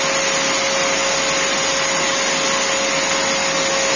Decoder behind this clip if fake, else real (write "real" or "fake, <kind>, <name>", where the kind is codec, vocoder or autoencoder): real